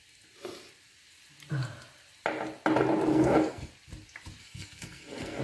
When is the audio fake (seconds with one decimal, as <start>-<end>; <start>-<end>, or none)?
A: 3.1-3.7; 4.4-5.4